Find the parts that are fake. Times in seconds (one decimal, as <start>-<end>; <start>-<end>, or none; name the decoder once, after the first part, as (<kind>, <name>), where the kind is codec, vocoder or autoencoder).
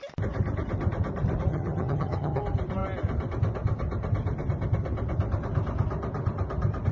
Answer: 1.5-2.4 (vocoder, HiFi-GAN)